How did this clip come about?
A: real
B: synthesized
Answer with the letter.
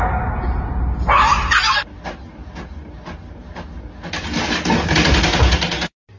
A